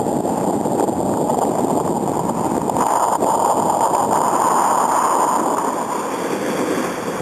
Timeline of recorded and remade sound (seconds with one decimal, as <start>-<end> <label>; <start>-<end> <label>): 0.0-7.2 recorded